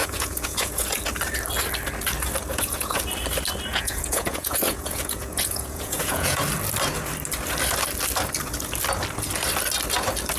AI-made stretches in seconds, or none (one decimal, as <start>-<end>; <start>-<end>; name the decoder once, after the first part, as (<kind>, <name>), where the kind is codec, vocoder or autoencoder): 0.0-1.0 (vocoder, Vocos); 2.5-3.0; 3.7-6.4